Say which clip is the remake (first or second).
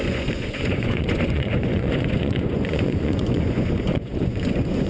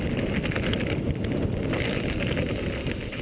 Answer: first